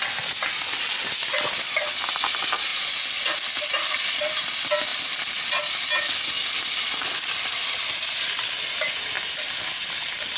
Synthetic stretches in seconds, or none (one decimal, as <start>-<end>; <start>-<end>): none